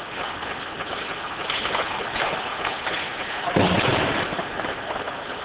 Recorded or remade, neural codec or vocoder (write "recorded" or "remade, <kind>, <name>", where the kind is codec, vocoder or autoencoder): recorded